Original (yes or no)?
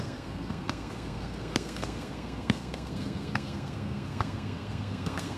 no